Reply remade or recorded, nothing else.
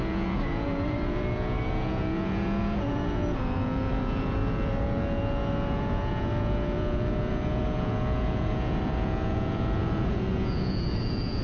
remade